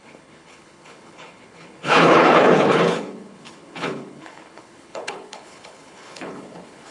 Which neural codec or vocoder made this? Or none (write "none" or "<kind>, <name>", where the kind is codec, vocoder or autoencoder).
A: codec, HILCodec